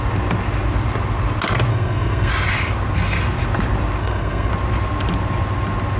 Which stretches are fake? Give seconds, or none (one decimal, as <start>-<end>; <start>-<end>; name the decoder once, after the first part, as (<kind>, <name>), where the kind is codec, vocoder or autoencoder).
1.7-2.3 (codec, SNAC); 4.0-4.5